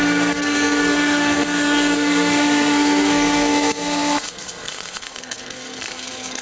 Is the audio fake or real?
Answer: fake